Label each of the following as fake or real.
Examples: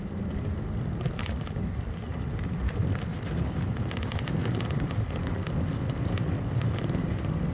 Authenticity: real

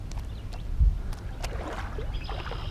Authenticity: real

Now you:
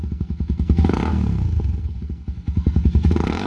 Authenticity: fake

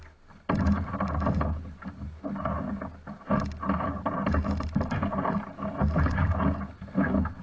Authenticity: real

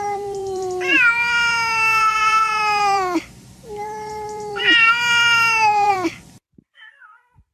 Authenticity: fake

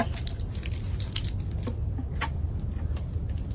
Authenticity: real